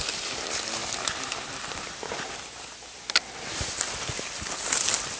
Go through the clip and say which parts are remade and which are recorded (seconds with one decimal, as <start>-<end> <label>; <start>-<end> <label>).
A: 0.0-0.8 recorded; 0.8-3.9 remade; 3.9-5.2 recorded

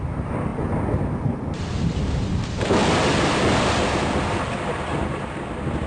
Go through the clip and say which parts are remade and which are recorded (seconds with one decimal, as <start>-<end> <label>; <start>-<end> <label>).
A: 0.0-0.5 remade; 0.5-1.8 recorded; 1.8-2.8 remade; 2.8-4.9 recorded; 4.9-5.9 remade

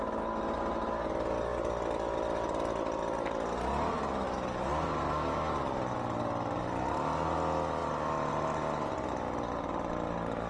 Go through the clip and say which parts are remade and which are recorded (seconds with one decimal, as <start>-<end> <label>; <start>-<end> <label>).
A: 0.0-10.5 recorded

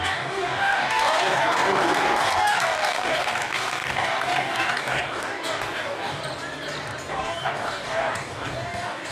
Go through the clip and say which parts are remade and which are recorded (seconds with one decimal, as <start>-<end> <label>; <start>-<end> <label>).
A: 0.0-6.2 remade; 6.2-7.1 recorded; 7.1-9.1 remade

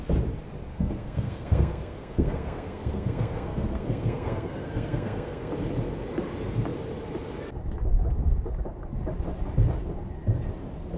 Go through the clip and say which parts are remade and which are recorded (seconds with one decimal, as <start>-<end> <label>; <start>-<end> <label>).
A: 0.0-0.7 recorded; 0.7-5.5 remade; 5.5-11.0 recorded

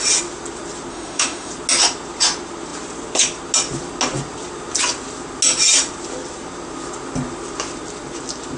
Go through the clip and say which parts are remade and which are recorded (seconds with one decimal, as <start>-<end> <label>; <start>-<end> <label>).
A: 0.0-0.9 recorded; 0.9-1.5 remade; 1.5-8.6 recorded

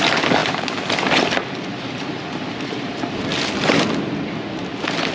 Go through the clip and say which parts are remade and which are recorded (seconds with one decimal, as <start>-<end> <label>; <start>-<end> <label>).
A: 0.0-0.4 recorded; 0.4-3.5 remade; 3.5-5.1 recorded